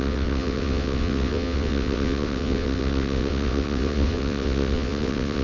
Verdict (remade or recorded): remade